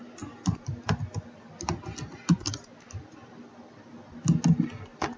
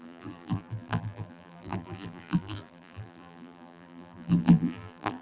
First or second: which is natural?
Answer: first